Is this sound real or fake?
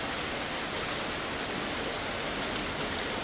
real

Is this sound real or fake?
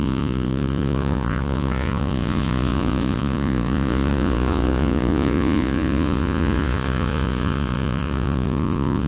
fake